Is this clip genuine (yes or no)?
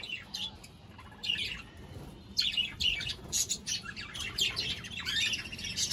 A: yes